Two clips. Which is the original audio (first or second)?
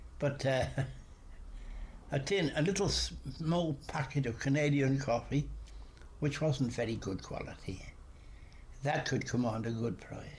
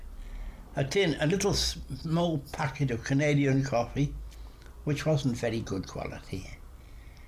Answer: second